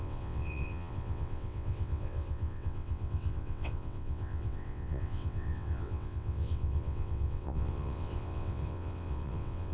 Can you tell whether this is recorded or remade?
remade